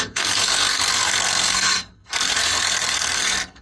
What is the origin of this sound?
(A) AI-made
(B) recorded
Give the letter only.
A